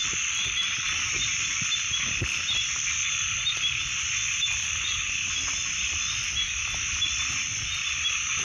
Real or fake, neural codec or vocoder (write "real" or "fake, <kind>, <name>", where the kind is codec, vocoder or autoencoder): real